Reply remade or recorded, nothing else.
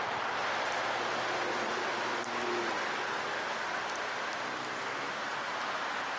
recorded